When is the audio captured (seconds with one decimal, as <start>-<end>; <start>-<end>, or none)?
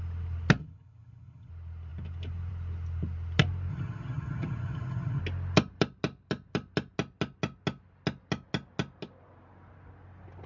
0.0-0.6; 1.5-3.7; 5.2-10.5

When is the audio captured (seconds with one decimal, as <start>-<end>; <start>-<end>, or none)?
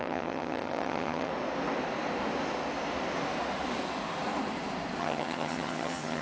1.3-5.0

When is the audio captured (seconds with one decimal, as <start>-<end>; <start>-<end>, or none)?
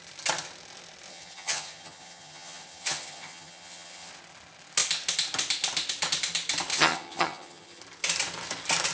0.0-1.1; 4.1-6.7; 7.8-8.9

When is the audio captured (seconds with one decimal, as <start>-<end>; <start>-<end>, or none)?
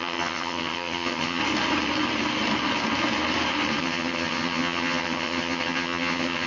1.4-3.8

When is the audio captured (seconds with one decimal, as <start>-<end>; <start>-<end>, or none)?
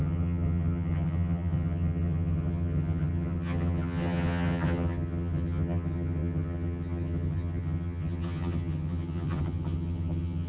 none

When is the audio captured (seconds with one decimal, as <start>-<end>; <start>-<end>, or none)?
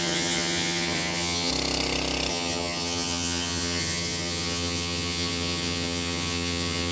1.5-2.3